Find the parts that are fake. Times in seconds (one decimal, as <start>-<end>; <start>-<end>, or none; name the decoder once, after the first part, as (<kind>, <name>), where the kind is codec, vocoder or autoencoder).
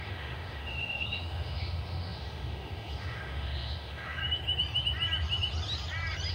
0.0-4.2 (autoencoder, DAC-VAE)